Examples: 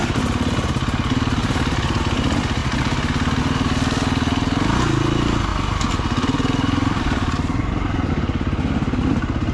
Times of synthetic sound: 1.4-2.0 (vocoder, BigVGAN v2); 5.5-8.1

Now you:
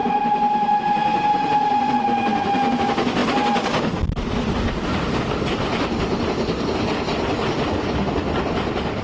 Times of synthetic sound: none

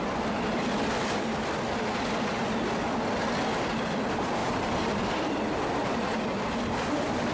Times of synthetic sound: 4.4-5.3 (vocoder, BigVGAN v2); 5.8-6.3

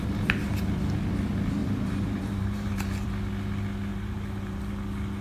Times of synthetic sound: 1.6-3.1 (vocoder, BigVGAN v2); 3.9-4.7

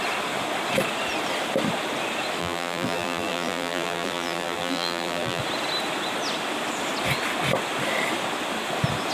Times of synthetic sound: 2.4-5.4 (vocoder, BigVGAN v2)